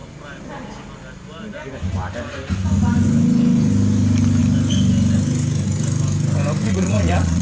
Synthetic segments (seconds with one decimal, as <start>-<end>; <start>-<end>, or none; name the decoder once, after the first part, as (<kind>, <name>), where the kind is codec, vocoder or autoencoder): 6.6-7.4 (vocoder, Vocos)